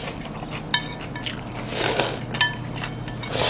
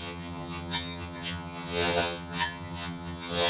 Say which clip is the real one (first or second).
first